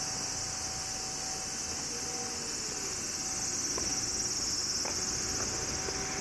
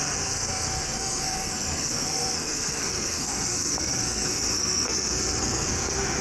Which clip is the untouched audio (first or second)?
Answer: first